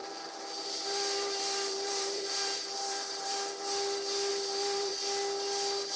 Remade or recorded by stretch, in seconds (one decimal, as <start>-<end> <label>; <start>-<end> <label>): 0.0-3.6 remade; 3.6-4.3 recorded; 4.3-4.9 remade; 4.9-6.0 recorded